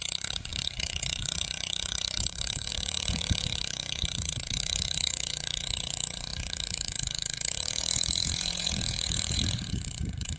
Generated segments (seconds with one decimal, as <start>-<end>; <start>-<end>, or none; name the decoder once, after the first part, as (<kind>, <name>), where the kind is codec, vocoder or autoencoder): 0.0-10.4 (vocoder, Vocos)